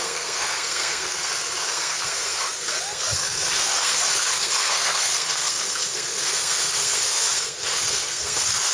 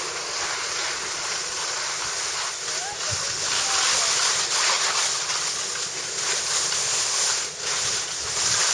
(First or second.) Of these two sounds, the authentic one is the second